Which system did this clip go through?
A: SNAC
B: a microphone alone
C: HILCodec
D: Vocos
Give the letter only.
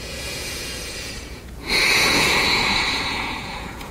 D